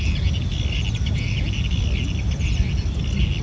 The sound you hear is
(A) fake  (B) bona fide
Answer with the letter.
B